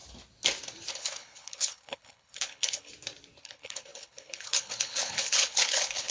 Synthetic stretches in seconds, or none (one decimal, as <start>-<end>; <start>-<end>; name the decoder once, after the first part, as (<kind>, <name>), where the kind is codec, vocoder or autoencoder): 0.9-2.9 (codec, HILCodec); 3.4-6.1